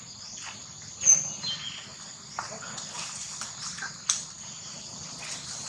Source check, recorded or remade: recorded